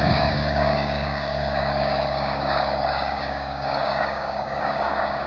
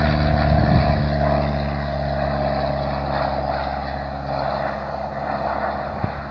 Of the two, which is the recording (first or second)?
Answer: second